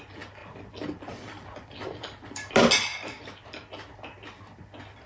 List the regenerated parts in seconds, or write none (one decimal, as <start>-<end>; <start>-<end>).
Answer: 0.4-2.5; 2.9-3.8